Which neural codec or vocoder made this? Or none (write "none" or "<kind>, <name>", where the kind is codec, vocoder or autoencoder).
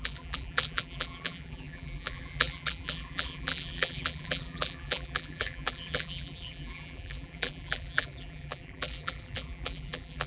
vocoder, BigVGAN v2